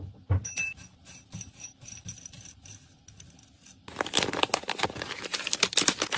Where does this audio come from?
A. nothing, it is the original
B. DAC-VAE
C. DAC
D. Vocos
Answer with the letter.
A